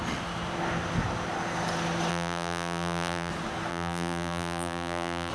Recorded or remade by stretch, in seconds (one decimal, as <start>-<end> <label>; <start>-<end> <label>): 0.0-2.1 recorded; 2.1-3.3 remade; 3.3-3.7 recorded; 3.7-5.3 remade